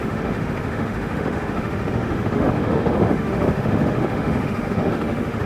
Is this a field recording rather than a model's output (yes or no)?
no